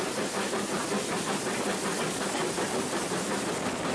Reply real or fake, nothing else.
real